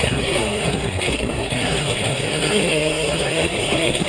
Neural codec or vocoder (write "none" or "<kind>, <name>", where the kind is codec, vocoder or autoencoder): codec, SNAC